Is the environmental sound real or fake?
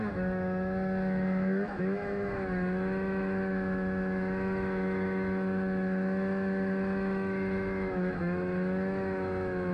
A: fake